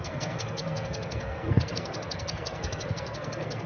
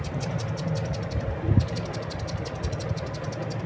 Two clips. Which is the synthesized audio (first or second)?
first